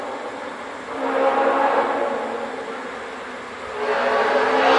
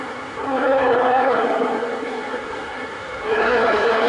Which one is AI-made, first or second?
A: second